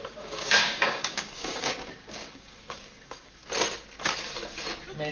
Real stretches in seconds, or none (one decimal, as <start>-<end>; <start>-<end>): 3.4-5.1